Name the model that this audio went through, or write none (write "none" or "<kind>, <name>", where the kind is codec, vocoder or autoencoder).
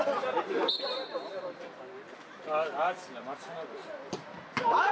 none